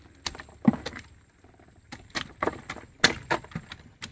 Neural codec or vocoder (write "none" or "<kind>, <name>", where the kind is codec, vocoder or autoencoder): none